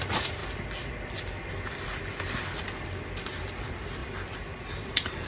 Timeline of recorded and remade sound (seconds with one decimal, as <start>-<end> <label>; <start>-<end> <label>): 0.0-0.4 remade; 0.4-3.6 recorded; 3.6-4.0 remade; 4.0-4.7 recorded; 4.7-5.3 remade